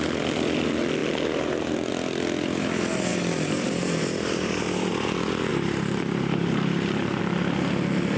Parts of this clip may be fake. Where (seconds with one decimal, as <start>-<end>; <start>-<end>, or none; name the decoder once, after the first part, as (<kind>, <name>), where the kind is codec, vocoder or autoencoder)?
1.0-1.9 (vocoder, BigVGAN v2); 3.1-4.9; 5.5-7.2